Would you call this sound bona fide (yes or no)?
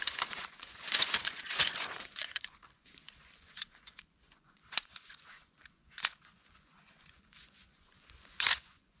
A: no